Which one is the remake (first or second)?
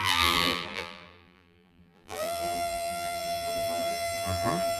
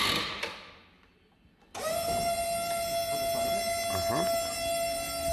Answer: first